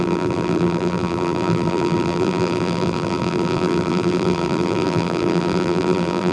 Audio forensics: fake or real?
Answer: fake